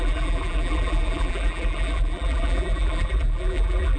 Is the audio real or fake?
fake